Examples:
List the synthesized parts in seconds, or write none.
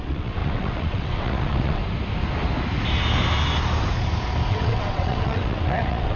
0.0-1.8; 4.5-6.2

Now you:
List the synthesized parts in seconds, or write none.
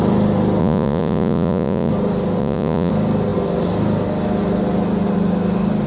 0.6-1.9; 2.4-2.9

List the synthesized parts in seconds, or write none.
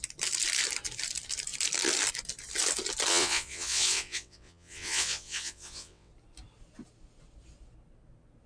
3.1-6.1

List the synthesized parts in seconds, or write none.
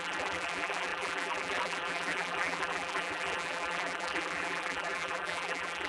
0.0-5.9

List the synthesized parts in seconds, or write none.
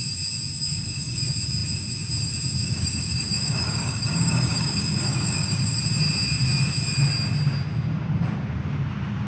0.6-1.2; 2.6-5.8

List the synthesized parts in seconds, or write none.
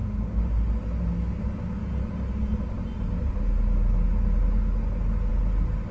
0.0-0.7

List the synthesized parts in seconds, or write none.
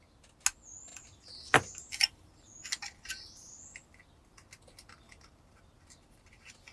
none